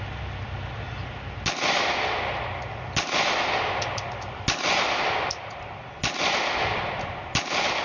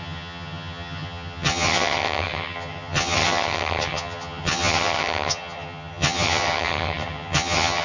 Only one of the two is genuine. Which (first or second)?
first